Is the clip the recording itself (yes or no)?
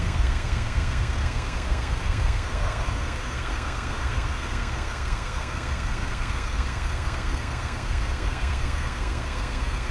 no